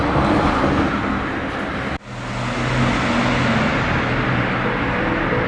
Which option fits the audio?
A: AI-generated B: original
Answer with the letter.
B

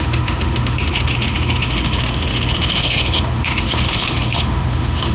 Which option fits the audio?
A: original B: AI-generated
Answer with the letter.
B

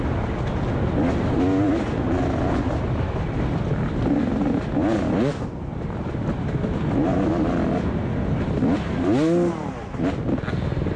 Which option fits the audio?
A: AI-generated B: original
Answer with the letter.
B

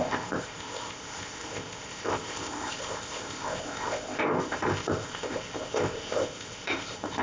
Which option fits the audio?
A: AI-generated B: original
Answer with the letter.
A